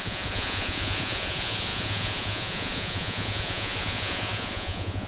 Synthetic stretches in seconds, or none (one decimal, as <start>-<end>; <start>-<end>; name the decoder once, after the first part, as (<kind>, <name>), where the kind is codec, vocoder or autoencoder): 0.0-5.1 (vocoder, Vocos)

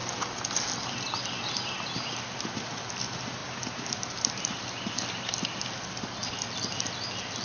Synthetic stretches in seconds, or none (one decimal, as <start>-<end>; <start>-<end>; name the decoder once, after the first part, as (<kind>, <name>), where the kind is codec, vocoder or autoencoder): none

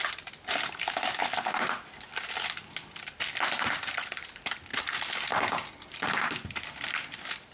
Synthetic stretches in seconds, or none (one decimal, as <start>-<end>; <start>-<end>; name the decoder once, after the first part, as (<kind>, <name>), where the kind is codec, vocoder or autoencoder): none

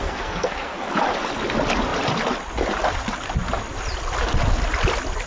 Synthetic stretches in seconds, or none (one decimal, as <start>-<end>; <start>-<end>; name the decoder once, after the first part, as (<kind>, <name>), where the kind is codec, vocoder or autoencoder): 0.0-0.9 (codec, SNAC)

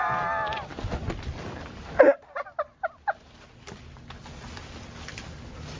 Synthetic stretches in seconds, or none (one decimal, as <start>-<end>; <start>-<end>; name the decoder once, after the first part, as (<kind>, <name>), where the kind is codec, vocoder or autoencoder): none

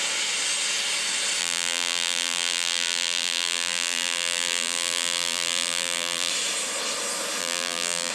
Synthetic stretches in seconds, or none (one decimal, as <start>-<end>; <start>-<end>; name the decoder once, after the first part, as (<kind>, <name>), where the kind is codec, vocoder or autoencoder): 1.4-6.3 (vocoder, BigVGAN v2); 7.4-8.1